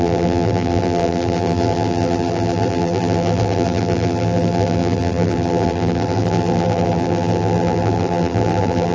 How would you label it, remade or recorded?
remade